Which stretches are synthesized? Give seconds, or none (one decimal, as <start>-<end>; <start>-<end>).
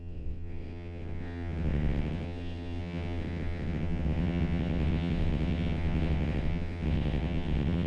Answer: 0.0-7.9